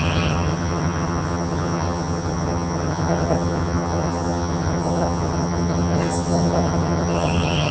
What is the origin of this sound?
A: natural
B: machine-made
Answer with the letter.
B